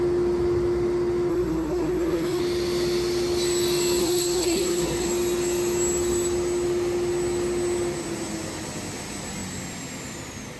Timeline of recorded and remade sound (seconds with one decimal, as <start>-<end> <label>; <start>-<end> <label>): 0.0-1.3 recorded; 1.3-2.4 remade; 2.4-4.0 recorded; 4.0-5.1 remade; 5.1-10.6 recorded